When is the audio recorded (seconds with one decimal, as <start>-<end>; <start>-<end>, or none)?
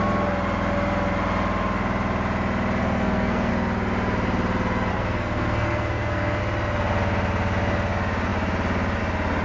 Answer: 0.0-2.8; 3.5-4.9; 6.4-9.4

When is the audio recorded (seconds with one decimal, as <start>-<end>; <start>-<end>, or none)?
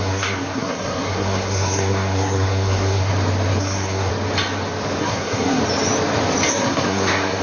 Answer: 3.1-3.6; 4.1-5.0; 5.6-6.5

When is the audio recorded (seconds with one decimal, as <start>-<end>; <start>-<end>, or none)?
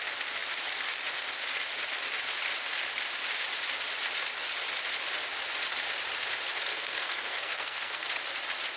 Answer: 0.0-6.7; 8.1-8.8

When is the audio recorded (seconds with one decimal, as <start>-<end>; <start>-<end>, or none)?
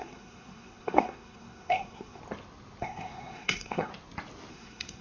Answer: 2.2-2.8; 3.9-4.5